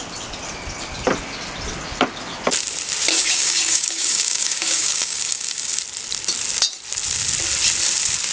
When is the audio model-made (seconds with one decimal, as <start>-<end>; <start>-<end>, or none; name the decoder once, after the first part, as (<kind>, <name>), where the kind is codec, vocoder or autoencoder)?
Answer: 3.1-5.8 (codec, DAC)